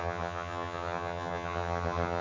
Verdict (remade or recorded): remade